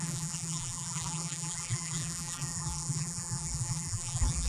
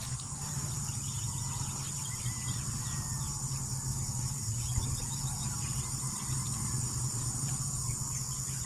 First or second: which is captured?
second